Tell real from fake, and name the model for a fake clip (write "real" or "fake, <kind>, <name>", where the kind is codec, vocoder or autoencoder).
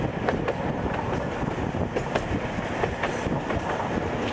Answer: real